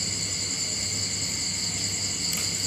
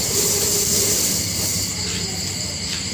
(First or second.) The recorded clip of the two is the first